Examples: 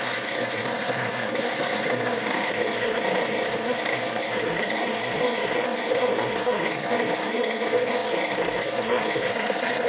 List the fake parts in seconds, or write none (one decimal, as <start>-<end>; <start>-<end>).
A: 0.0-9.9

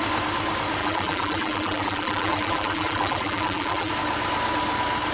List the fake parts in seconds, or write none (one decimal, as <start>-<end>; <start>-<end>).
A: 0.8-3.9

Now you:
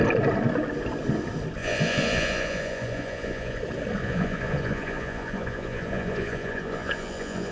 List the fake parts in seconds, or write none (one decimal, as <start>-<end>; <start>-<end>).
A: 1.6-3.6; 4.0-7.5

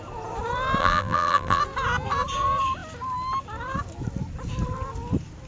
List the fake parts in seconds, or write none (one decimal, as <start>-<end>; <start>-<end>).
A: 0.8-1.6